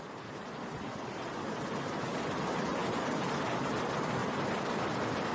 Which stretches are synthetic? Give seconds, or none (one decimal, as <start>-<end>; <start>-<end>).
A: 2.8-3.6; 4.2-4.7